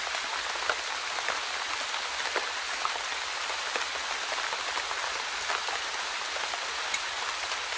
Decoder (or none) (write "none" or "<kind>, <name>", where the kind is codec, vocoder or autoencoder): none